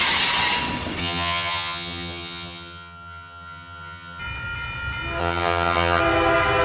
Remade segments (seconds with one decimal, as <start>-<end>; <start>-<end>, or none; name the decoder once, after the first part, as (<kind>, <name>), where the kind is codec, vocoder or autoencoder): 1.0-4.2 (vocoder, HiFi-GAN); 5.2-6.0